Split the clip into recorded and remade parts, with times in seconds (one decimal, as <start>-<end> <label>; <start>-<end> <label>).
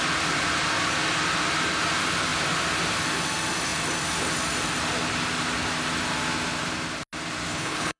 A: 0.0-7.5 recorded; 7.5-8.0 remade